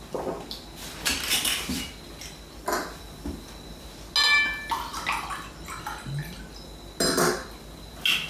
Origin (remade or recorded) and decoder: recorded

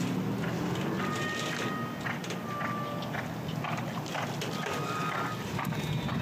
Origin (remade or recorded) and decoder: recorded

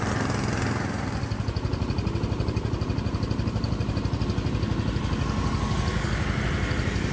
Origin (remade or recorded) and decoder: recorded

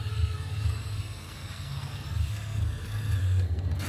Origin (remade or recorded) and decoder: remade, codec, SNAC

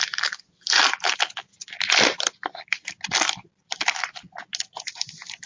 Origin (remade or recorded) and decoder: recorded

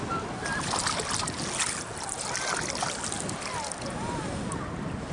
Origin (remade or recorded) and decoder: recorded